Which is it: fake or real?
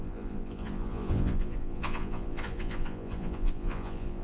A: fake